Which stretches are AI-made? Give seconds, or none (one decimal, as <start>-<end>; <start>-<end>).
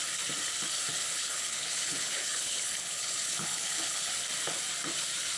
0.9-4.1